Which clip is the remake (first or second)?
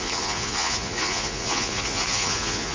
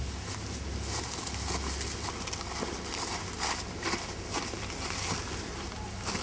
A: first